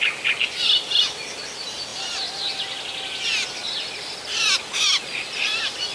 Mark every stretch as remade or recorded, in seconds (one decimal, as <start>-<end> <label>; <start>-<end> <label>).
0.0-5.9 recorded